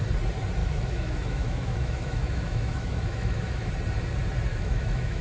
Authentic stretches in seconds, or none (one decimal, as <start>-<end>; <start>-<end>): 0.0-0.6; 3.7-4.5